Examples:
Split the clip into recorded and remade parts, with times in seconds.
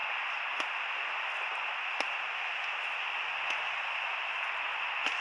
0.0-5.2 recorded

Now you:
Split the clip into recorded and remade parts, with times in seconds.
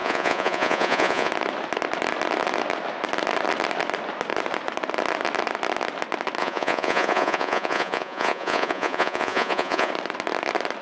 0.0-1.3 remade; 1.3-6.4 recorded; 6.4-9.9 remade; 9.9-10.8 recorded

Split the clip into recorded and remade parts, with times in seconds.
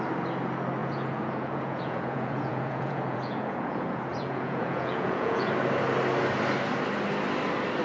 0.0-0.8 recorded; 0.8-5.5 remade; 5.5-7.8 recorded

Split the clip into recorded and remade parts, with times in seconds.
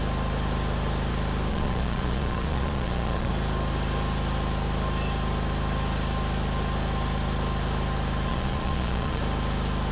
0.0-1.5 recorded; 1.5-3.3 remade; 3.3-8.3 recorded; 8.3-9.2 remade; 9.2-9.9 recorded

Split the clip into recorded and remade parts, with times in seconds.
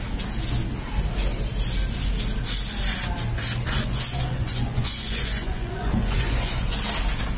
0.0-3.8 recorded; 3.8-6.8 remade; 6.8-7.4 recorded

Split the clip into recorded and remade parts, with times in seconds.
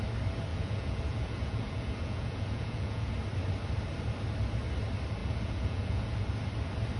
0.0-0.5 recorded; 0.5-3.1 remade; 3.1-5.2 recorded; 5.2-6.2 remade; 6.2-7.0 recorded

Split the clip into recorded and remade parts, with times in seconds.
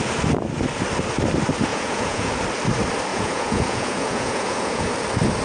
0.0-1.7 recorded; 1.7-2.3 remade; 2.3-3.1 recorded; 3.1-4.9 remade; 4.9-5.4 recorded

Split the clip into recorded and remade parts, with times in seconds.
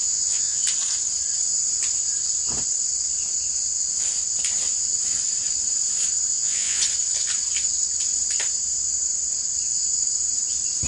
0.0-0.6 remade; 0.6-6.3 recorded; 6.3-6.8 remade; 6.8-10.9 recorded